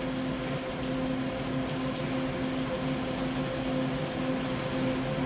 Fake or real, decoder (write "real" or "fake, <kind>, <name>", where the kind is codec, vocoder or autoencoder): real